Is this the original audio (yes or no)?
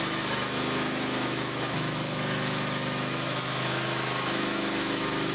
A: no